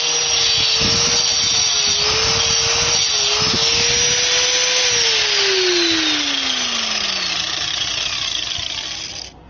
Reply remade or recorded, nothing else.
recorded